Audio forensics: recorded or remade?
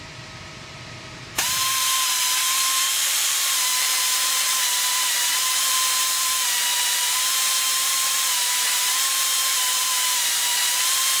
remade